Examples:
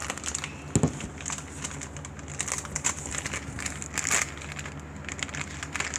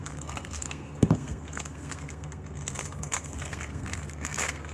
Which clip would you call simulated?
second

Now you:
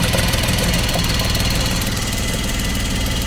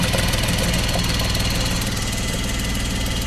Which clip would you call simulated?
first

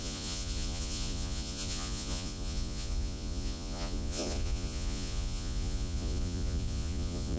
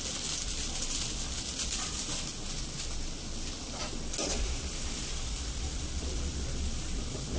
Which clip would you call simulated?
first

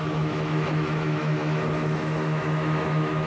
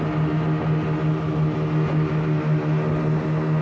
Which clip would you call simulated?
first